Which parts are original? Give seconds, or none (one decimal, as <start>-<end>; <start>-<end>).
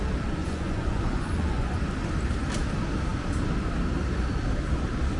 0.0-0.4; 1.8-5.2